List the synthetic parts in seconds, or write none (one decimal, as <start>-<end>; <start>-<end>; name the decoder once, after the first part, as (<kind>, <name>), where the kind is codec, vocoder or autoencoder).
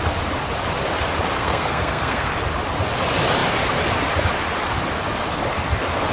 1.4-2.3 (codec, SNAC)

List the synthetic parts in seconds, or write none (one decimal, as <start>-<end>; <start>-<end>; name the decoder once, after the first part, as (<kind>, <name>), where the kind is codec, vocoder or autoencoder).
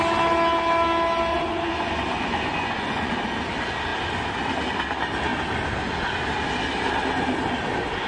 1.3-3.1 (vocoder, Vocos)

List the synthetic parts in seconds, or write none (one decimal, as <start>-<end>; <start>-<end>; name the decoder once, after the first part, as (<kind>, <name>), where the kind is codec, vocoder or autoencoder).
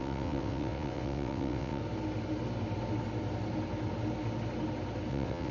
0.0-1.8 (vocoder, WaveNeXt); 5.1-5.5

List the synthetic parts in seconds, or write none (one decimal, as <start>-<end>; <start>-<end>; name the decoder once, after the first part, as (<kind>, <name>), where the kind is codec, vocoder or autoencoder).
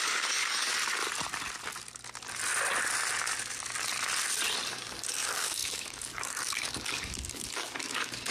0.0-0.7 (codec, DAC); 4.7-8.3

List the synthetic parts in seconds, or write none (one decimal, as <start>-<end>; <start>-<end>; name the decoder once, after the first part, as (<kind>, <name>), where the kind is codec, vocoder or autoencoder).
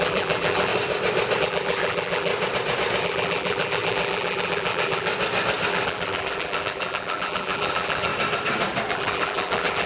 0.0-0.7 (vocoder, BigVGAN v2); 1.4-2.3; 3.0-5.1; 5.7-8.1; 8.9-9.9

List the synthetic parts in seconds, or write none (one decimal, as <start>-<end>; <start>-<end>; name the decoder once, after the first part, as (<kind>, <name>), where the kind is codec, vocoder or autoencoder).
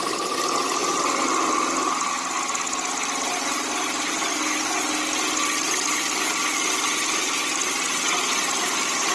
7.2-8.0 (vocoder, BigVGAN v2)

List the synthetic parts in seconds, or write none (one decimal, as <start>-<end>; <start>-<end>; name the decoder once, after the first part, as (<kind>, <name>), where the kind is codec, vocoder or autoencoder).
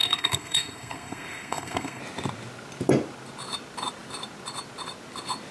0.0-2.0 (codec, SNAC)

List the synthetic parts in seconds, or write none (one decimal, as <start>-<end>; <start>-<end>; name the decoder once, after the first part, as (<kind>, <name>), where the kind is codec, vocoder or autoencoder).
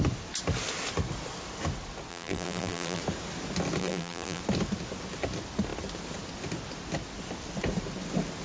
2.1-3.0 (vocoder, BigVGAN v2); 3.8-4.4